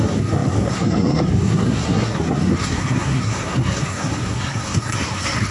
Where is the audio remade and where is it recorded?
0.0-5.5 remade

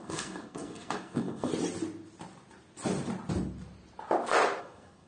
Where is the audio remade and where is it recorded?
0.0-1.5 remade; 1.5-4.6 recorded; 4.6-5.1 remade

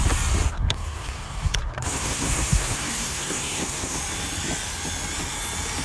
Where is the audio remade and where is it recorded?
0.0-0.5 recorded; 0.5-4.0 remade; 4.0-5.8 recorded

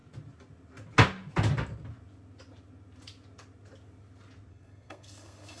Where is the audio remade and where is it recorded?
0.0-4.5 recorded; 4.5-5.6 remade

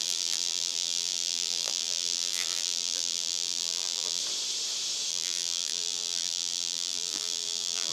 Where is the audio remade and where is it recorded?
0.0-4.2 remade; 4.2-5.1 recorded; 5.1-7.9 remade